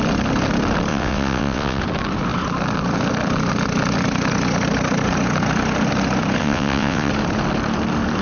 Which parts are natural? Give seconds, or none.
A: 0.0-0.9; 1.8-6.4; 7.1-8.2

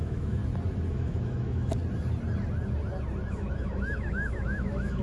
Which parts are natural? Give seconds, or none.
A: 0.4-0.9; 1.8-3.3